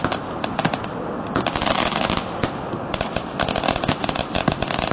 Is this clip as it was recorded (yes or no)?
yes